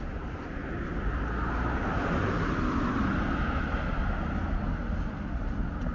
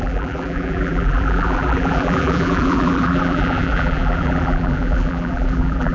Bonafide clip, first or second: first